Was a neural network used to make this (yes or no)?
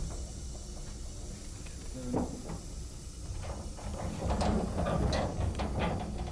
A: no